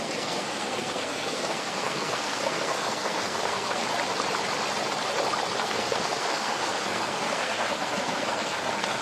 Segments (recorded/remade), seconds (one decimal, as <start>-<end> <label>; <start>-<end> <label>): 0.0-3.8 remade; 3.8-5.6 recorded; 5.6-9.0 remade